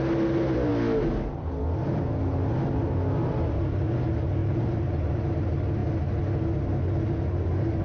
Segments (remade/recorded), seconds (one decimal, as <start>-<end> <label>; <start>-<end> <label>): 0.0-4.4 recorded; 4.4-5.3 remade; 5.3-7.8 recorded